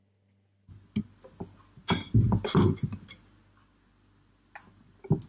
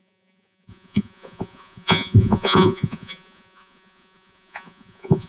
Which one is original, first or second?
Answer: first